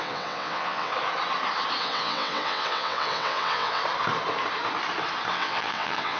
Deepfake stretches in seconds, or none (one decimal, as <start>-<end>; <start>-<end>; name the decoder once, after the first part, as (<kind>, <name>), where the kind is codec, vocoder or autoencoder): 0.0-0.9 (vocoder, WaveNeXt); 1.8-3.8; 5.3-6.2